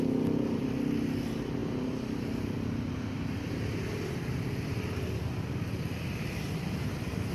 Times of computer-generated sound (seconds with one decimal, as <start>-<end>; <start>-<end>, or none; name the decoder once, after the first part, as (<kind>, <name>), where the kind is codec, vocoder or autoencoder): none